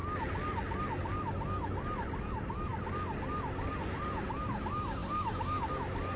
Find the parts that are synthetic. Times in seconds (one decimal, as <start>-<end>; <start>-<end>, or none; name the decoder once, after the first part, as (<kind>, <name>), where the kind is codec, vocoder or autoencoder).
none